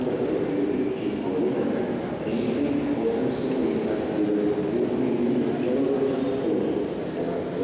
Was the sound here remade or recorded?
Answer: recorded